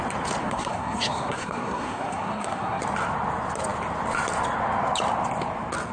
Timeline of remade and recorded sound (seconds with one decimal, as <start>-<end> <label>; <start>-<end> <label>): 0.0-0.4 recorded; 0.4-2.8 remade; 2.8-5.9 recorded